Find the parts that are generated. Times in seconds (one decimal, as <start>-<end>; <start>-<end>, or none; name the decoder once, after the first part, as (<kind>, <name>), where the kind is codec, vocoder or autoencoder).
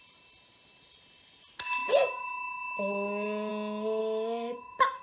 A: 4.0-5.0 (autoencoder, DAC-VAE)